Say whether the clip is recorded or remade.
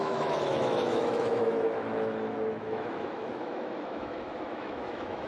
remade